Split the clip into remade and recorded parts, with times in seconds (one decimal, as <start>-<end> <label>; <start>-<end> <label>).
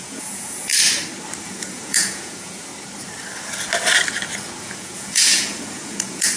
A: 0.0-0.7 remade; 0.7-1.4 recorded; 1.4-2.7 remade; 2.7-4.6 recorded; 4.6-6.4 remade